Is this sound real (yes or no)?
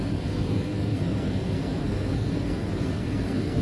no